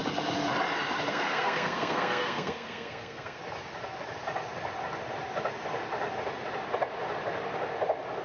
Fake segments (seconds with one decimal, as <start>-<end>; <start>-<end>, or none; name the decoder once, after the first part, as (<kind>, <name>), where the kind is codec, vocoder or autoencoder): 1.1-3.4 (codec, SNAC)